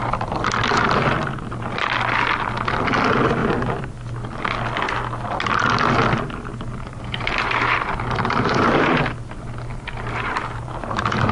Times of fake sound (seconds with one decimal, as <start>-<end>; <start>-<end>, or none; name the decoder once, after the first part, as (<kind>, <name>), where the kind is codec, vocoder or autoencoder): 6.5-9.0 (vocoder, BigVGAN v2); 9.7-11.3